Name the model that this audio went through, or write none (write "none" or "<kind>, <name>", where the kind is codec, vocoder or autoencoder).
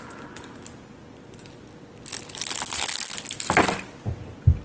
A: none